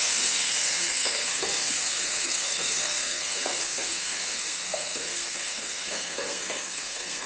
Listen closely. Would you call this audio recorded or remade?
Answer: remade